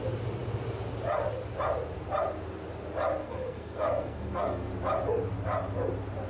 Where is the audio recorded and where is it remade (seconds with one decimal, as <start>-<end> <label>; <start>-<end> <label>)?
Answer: 0.0-3.2 recorded; 3.2-4.7 remade; 4.7-6.3 recorded